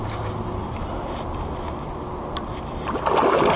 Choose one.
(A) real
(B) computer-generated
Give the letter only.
A